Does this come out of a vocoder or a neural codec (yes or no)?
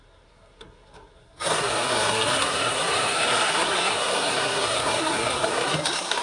yes